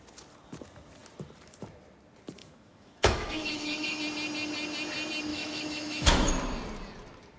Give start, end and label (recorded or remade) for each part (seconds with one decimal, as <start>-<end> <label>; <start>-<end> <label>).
0.0-2.4 recorded; 2.4-4.0 remade; 4.0-5.3 recorded; 5.3-6.3 remade; 6.3-7.4 recorded